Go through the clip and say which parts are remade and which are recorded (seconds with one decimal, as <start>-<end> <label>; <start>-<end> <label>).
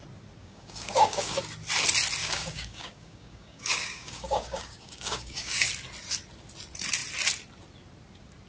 0.0-0.4 recorded; 0.4-1.4 remade; 1.4-2.2 recorded; 2.2-5.7 remade; 5.7-8.5 recorded